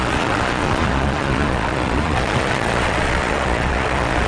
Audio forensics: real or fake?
fake